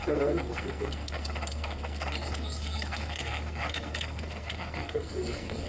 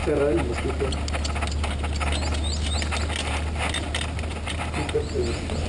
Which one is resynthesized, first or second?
first